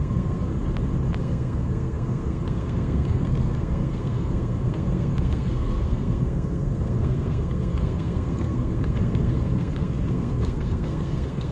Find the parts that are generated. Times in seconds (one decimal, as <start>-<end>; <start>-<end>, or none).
0.0-0.5; 1.2-11.5